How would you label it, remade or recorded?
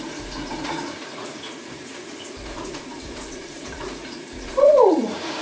remade